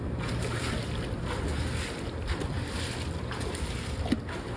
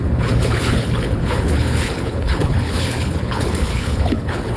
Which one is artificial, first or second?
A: second